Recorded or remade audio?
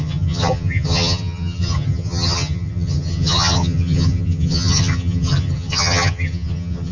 remade